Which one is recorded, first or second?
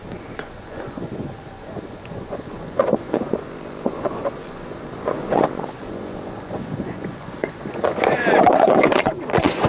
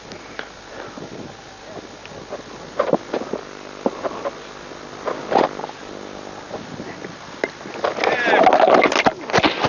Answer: second